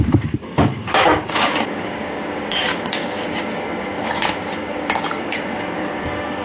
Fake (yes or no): yes